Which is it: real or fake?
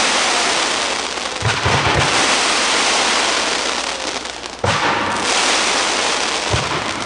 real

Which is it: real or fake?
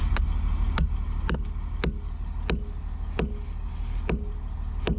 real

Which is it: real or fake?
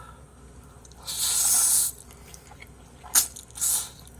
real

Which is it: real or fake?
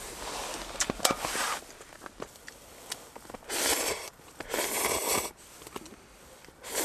real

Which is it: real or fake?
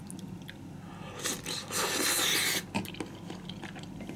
real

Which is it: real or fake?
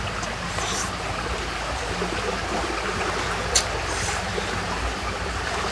real